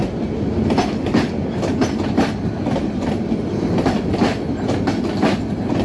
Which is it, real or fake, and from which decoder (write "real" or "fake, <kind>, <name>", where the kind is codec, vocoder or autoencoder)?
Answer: real